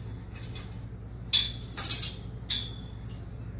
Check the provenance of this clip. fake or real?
real